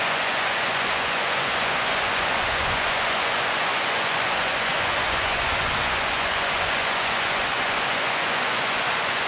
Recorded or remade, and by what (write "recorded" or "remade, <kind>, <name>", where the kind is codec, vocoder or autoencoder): remade, vocoder, Vocos